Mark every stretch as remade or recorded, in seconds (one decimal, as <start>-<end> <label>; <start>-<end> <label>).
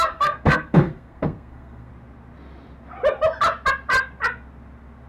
0.0-1.9 remade; 1.9-5.1 recorded